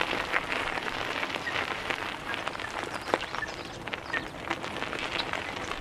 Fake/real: real